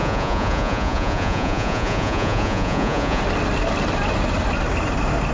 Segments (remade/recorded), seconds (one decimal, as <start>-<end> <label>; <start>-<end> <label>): 0.0-3.2 remade; 3.2-5.3 recorded